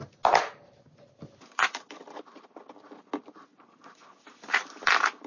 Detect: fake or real real